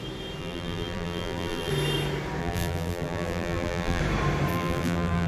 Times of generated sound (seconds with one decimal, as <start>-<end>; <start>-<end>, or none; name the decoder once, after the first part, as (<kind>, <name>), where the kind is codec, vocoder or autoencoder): 0.4-1.7 (vocoder, BigVGAN v2); 2.4-4.0; 4.5-5.3